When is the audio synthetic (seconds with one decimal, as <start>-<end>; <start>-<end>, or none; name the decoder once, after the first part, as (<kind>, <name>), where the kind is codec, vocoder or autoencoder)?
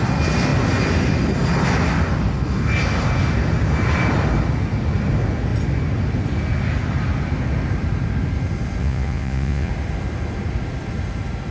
8.8-9.7 (vocoder, Vocos)